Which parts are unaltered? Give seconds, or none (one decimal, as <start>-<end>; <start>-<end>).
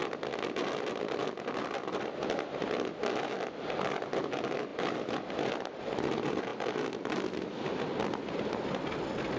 0.0-9.4